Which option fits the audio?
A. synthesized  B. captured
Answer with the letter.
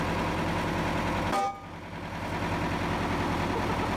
B